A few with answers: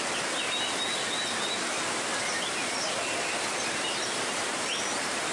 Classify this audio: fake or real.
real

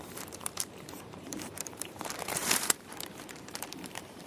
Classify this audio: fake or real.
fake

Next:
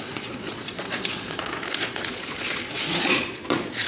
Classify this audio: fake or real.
fake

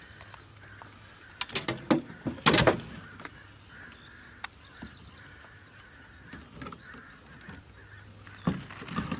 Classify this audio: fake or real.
real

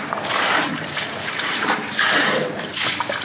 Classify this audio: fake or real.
fake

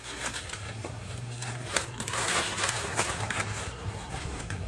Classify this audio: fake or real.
fake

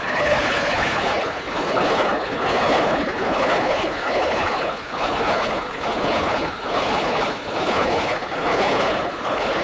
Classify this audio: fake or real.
fake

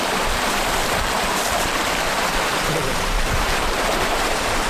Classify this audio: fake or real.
fake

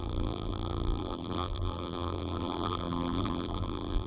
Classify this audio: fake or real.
fake